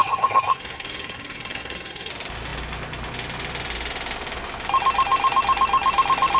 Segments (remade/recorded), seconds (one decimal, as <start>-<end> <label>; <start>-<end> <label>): 0.0-2.1 remade; 2.1-6.4 recorded